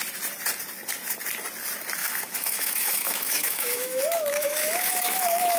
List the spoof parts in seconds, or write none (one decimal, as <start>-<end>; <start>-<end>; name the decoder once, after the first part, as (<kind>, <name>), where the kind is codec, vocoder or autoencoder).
2.0-5.6 (autoencoder, DAC-VAE)